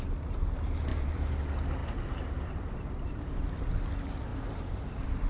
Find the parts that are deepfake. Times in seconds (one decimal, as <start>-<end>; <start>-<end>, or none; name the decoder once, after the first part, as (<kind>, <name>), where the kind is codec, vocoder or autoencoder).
0.9-1.4 (vocoder, BigVGAN v2); 1.8-3.4; 4.3-5.3